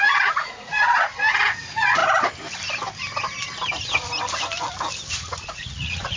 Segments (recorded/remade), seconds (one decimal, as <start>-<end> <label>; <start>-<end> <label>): 0.0-2.0 remade; 2.0-5.1 recorded; 5.1-6.2 remade